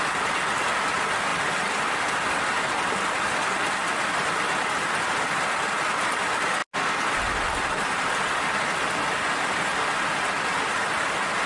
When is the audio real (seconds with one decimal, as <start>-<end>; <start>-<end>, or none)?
0.0-11.5